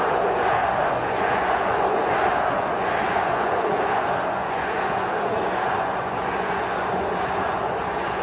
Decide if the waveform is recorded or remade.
remade